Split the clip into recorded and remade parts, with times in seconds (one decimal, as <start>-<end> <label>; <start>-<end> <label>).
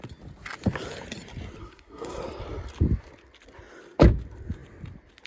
0.0-1.6 recorded; 1.6-2.2 remade; 2.2-5.3 recorded